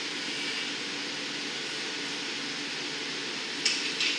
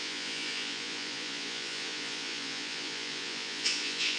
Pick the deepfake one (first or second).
second